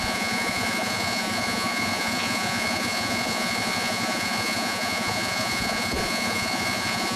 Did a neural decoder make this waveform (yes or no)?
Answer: yes